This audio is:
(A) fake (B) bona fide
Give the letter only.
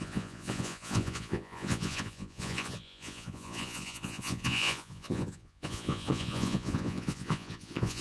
A